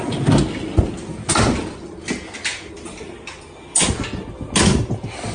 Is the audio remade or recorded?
recorded